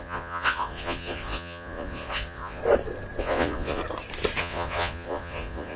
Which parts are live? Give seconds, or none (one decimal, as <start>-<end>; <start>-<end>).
2.6-3.2; 3.8-4.4